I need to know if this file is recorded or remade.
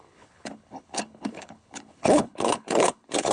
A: remade